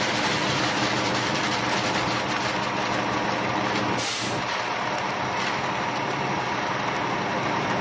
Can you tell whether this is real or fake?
real